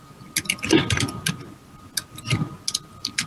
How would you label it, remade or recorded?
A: recorded